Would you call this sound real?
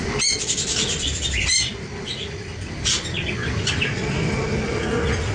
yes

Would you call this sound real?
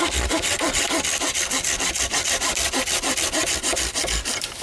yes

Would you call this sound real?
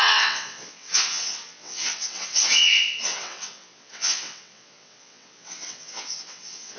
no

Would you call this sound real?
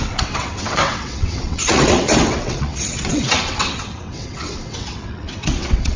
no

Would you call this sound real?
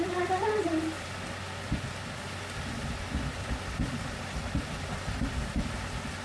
yes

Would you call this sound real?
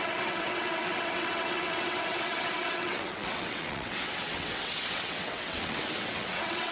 no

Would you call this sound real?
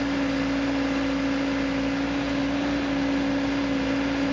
yes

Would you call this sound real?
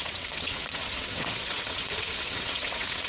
no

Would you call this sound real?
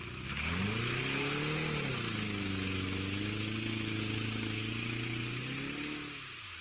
yes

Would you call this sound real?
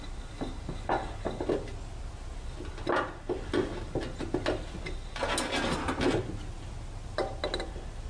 yes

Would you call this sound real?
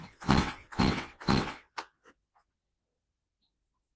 no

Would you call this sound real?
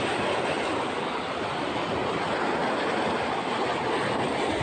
yes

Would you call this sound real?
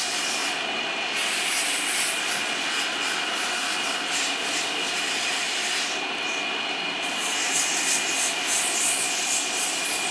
yes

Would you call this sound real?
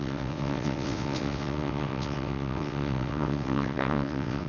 no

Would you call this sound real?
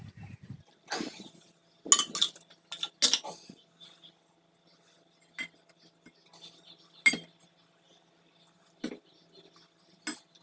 yes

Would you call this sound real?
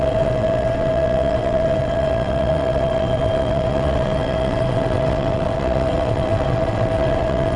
no